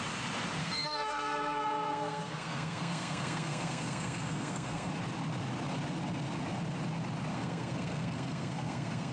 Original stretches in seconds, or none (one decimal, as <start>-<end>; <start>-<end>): 0.0-0.6; 4.9-7.3